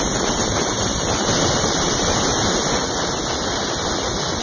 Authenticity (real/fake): real